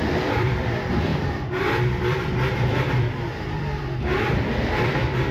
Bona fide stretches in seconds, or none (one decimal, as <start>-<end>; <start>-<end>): none

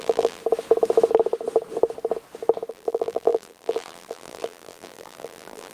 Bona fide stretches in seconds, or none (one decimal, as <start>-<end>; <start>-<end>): 0.4-2.7

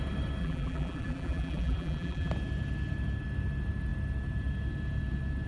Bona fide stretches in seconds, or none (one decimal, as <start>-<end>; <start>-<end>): 0.0-0.4; 2.3-5.5

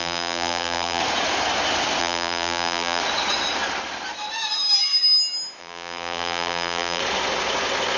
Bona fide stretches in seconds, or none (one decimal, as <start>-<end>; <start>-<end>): 1.0-2.0; 3.0-5.6; 7.0-8.0

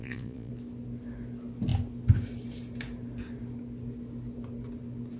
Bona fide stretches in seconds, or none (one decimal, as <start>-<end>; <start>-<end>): 0.5-5.2